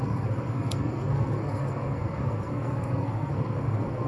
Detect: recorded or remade remade